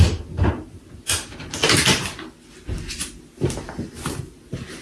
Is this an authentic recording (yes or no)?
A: yes